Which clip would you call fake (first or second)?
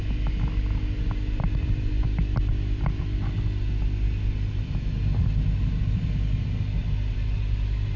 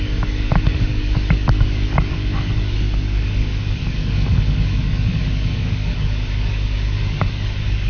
second